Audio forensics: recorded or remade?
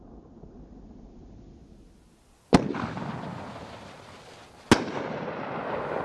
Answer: recorded